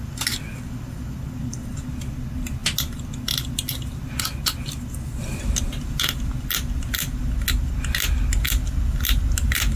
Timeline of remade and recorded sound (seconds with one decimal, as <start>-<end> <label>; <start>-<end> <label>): 0.0-9.8 recorded